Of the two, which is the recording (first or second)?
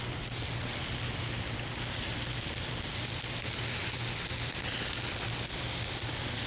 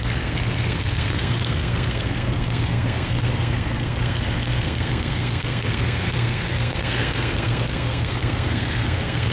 first